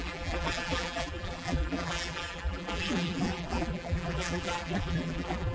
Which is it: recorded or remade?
remade